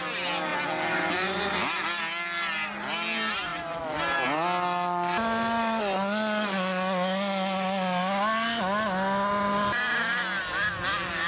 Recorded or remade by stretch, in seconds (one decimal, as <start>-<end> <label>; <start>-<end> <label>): 0.0-11.3 recorded